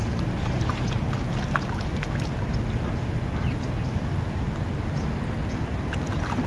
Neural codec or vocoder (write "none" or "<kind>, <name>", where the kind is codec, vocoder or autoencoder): none